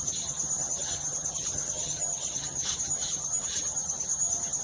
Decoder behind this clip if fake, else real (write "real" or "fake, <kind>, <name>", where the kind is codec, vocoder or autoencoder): fake, vocoder, HiFi-GAN